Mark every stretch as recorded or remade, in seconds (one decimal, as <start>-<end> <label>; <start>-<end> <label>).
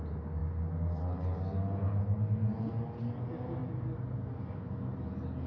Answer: 0.0-5.5 recorded